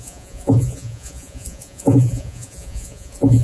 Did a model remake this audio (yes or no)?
yes